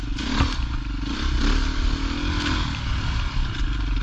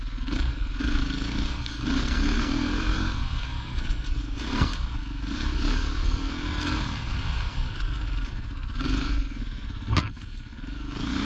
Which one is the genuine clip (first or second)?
first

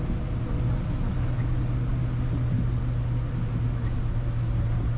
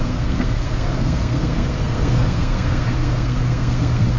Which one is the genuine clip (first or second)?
first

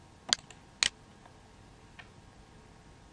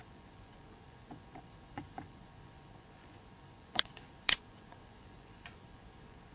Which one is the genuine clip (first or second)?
first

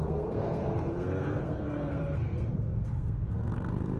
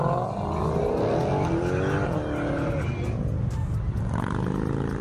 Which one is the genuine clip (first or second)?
second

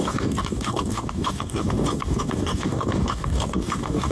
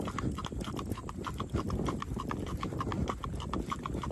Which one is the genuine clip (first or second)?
second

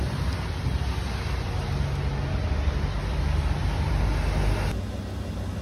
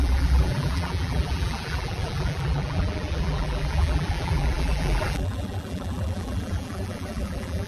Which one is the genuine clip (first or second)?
first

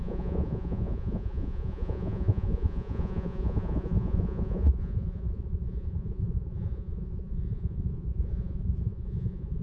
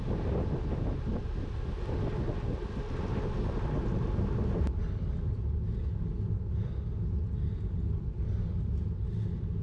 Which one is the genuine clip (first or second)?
second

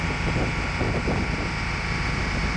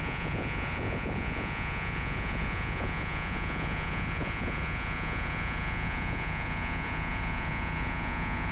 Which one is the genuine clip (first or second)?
first